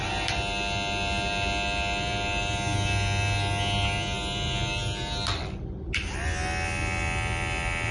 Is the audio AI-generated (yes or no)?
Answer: no